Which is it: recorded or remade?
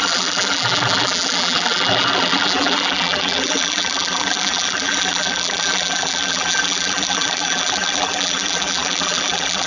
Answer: remade